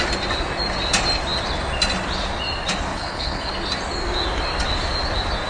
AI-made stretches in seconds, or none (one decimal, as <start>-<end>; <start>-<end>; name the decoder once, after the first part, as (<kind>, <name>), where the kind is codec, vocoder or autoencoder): 2.9-3.5 (codec, HILCodec)